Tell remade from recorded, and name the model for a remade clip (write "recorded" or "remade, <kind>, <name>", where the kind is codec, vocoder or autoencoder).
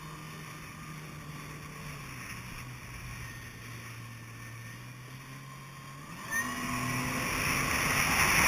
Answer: recorded